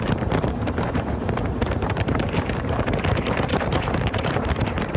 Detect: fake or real fake